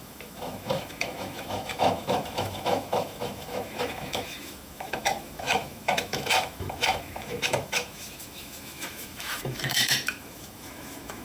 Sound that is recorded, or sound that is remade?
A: remade